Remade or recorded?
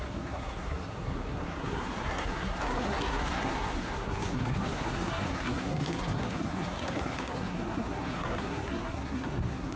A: remade